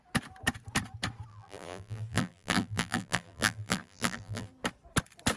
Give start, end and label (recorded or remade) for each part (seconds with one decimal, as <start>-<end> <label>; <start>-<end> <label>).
0.0-1.3 recorded; 1.3-4.5 remade; 4.5-5.4 recorded